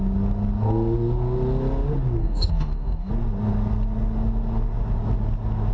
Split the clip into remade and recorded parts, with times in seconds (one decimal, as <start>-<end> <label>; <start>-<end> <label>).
0.0-2.2 recorded; 2.2-3.1 remade; 3.1-5.7 recorded